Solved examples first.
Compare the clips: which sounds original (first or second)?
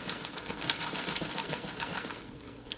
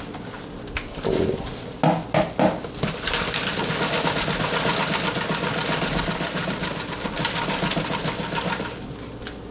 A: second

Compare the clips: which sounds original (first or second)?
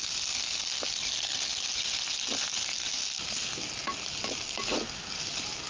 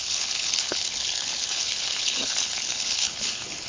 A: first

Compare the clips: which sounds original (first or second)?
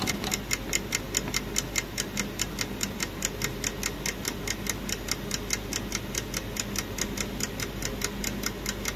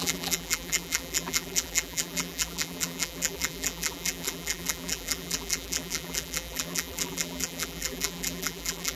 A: first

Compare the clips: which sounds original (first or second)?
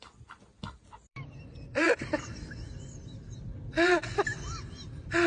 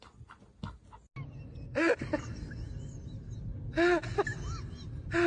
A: second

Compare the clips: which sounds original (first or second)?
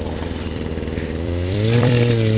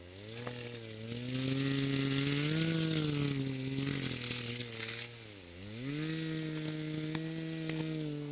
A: second